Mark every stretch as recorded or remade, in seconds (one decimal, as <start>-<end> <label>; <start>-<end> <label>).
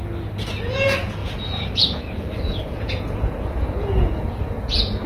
0.0-0.6 recorded; 0.6-5.1 remade